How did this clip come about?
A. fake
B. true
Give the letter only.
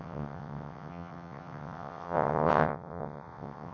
A